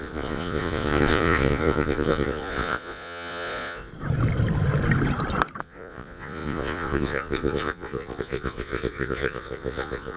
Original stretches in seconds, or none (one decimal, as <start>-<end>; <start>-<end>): 3.9-5.6